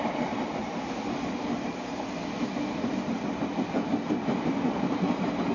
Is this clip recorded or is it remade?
recorded